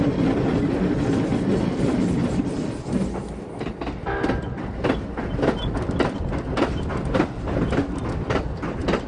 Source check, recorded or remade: recorded